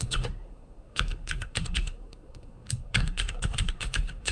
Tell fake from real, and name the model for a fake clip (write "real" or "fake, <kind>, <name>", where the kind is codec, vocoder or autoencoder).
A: fake, codec, SNAC